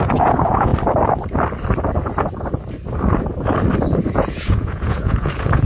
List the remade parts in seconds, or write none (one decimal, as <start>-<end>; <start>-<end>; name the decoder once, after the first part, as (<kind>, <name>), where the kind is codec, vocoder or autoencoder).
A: 0.0-0.7 (vocoder, Vocos); 4.1-5.6